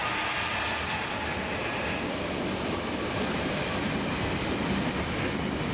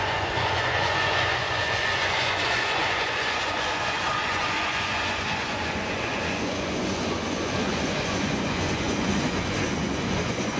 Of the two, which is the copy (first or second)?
second